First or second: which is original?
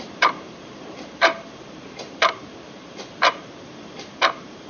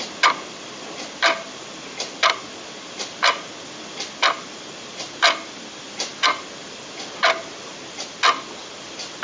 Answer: second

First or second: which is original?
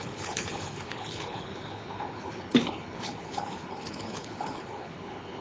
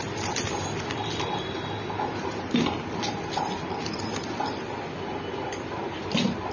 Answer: second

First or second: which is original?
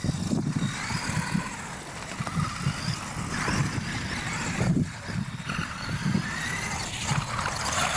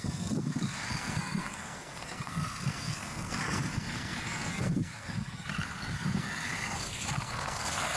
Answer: first